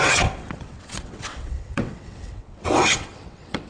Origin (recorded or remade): remade